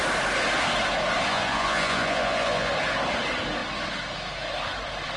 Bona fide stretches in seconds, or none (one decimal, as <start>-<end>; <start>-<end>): 0.0-1.3; 2.7-5.2

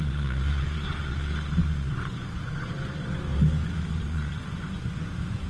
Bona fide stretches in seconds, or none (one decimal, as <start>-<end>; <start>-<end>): 3.3-4.0

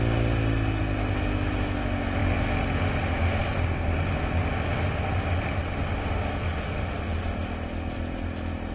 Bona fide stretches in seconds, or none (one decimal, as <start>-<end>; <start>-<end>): 0.0-8.7

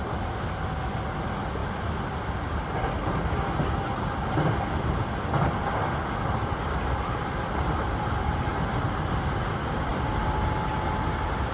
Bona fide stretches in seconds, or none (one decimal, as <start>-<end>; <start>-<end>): 0.0-11.5

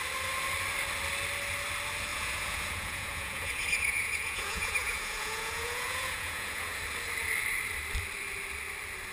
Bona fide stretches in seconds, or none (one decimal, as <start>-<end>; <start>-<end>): 0.0-2.1; 6.8-9.1

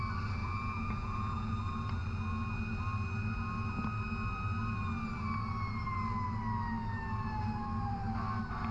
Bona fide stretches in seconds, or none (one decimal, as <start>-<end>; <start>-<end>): 0.0-0.4; 1.5-8.7

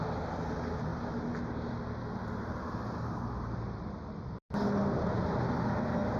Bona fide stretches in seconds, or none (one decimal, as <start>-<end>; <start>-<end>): 0.0-2.2; 2.8-6.2